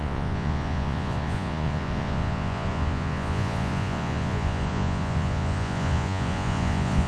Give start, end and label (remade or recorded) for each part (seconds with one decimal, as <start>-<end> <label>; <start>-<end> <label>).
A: 0.0-7.1 remade